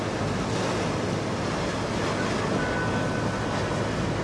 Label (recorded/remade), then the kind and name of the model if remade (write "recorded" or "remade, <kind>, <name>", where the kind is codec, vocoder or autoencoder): recorded